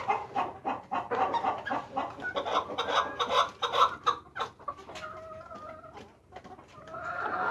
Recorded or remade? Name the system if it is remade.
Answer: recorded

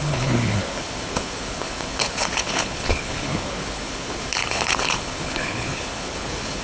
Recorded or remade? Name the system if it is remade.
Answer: remade, codec, HILCodec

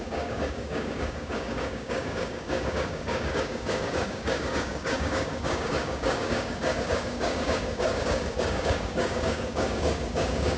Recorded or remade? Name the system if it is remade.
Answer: remade, codec, DAC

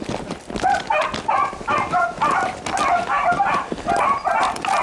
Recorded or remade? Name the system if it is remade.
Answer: recorded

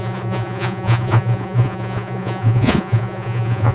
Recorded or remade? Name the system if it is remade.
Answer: remade, vocoder, Vocos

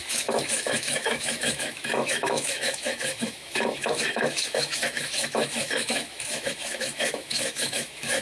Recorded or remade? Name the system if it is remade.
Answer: remade, autoencoder, DAC-VAE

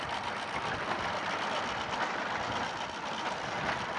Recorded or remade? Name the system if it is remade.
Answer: recorded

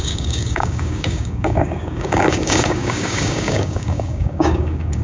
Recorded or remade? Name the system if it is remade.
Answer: remade, codec, DAC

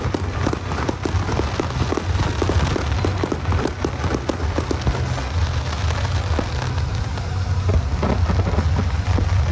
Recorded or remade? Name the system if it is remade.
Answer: recorded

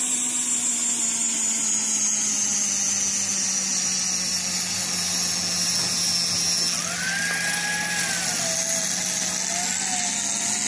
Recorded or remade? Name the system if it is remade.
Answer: recorded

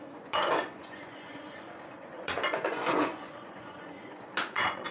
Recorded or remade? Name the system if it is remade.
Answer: remade, vocoder, Vocos